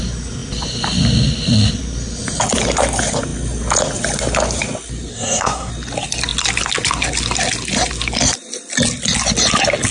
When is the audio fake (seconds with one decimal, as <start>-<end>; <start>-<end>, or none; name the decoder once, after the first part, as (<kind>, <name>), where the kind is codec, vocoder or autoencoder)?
5.1-5.7 (codec, SNAC)

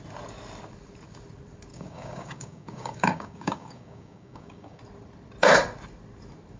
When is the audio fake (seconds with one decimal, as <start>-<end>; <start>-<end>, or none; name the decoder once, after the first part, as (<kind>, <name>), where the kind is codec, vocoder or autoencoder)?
1.7-4.8 (codec, DAC)

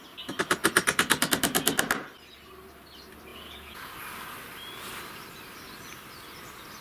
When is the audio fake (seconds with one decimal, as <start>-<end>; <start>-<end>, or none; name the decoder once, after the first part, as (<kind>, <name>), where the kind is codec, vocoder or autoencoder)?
3.3-3.9 (vocoder, Vocos)